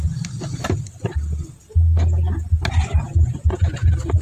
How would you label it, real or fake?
real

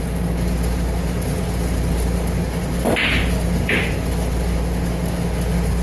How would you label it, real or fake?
real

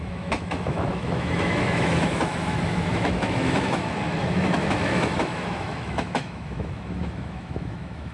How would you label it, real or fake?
fake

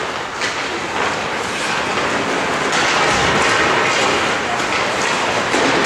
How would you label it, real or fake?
real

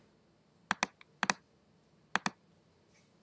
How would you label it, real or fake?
real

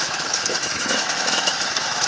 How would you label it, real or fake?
fake